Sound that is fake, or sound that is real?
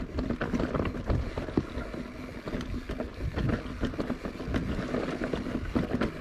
real